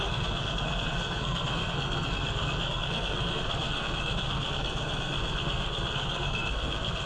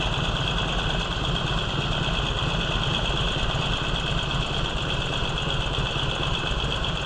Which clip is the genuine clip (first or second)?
second